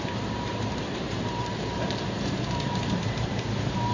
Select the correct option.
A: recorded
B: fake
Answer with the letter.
B